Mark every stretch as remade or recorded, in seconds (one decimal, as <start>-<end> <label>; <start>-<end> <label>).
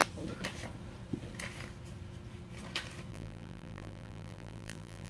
0.0-3.1 recorded; 3.1-5.1 remade